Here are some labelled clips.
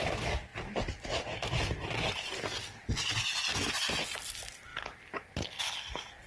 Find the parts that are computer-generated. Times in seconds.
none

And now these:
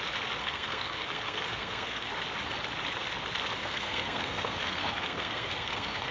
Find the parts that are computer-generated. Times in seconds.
0.4-2.1 (codec, SNAC); 3.6-6.1

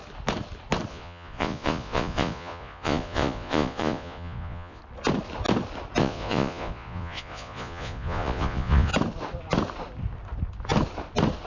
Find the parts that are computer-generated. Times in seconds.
0.9-4.8 (vocoder, Vocos); 6.0-8.9

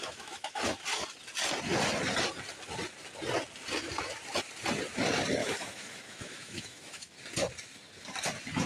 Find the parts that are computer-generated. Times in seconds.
0.0-0.6 (autoencoder, DAC-VAE); 5.4-7.1

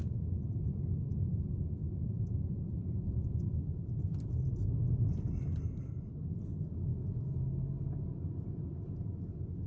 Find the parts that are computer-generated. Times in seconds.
0.0-1.0 (vocoder, BigVGAN v2); 1.8-6.1

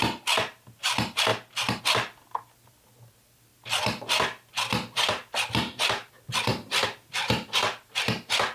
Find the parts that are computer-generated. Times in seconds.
6.5-7.3 (vocoder, BigVGAN v2)